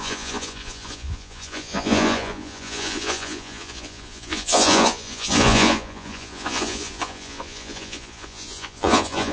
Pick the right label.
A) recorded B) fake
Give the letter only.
B